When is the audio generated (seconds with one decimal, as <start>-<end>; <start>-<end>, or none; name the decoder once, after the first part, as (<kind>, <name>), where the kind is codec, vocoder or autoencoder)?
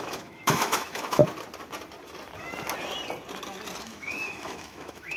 0.0-1.2 (autoencoder, DAC-VAE); 3.8-5.2